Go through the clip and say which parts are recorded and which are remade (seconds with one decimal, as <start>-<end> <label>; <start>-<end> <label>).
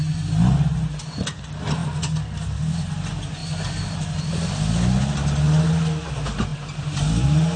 0.0-7.6 recorded